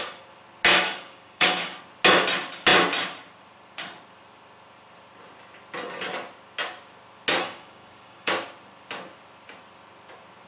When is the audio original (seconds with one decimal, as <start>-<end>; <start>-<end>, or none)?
0.0-0.7; 1.8-7.4; 8.3-10.5